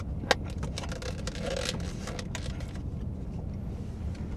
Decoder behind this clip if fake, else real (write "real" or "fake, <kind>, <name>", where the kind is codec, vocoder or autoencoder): real